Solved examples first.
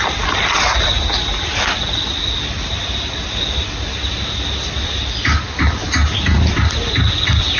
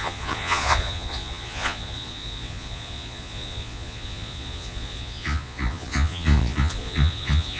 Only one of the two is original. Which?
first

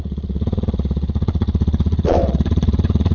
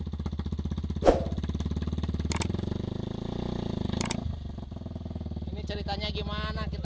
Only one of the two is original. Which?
second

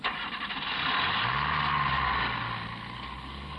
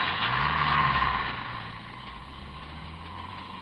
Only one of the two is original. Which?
first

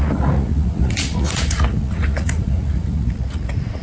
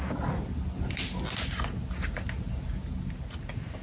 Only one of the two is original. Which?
second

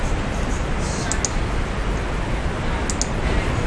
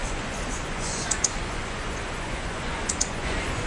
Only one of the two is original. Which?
first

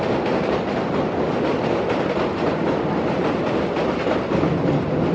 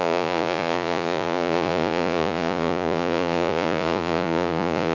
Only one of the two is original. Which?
first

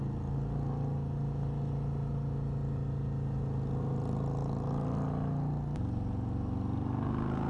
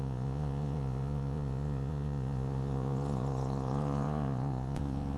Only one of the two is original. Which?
first